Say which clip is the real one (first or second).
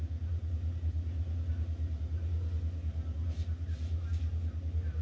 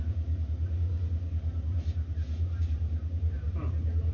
first